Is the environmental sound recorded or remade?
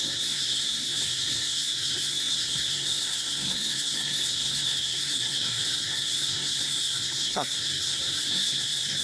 remade